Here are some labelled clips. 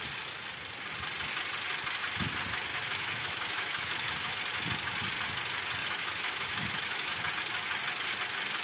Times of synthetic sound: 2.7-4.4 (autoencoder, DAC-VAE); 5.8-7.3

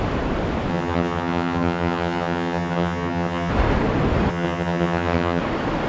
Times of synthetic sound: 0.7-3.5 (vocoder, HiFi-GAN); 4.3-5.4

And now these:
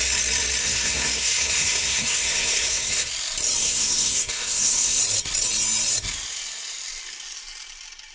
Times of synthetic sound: 0.6-3.1 (codec, SNAC); 3.6-5.0

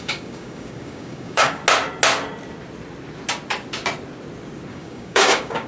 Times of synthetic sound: 0.0-1.6 (codec, DAC); 4.7-5.7

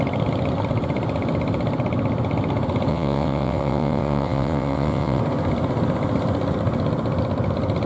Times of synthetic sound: 2.9-5.2 (vocoder, WaveNeXt)